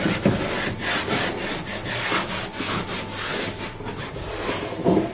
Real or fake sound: real